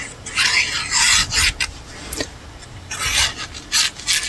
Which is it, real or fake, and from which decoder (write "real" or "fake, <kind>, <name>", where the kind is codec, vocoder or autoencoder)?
real